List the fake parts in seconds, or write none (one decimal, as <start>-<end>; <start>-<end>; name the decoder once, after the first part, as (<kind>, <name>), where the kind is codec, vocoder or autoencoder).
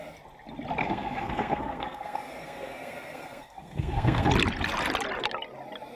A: 0.8-4.3 (codec, SNAC)